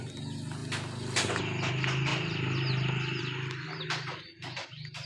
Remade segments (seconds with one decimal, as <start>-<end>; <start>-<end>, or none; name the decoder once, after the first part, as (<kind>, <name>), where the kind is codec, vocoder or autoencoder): none